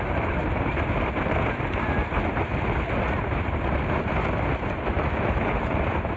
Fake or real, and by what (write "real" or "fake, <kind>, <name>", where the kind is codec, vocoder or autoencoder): real